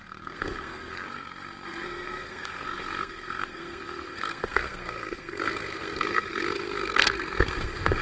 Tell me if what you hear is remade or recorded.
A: remade